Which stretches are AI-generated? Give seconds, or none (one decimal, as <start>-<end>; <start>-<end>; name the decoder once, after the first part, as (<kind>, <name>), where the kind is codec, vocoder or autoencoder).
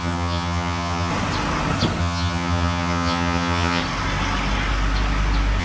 0.0-1.1 (vocoder, HiFi-GAN); 2.0-3.8